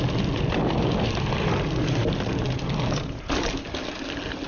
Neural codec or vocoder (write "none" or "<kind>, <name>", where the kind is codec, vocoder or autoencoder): none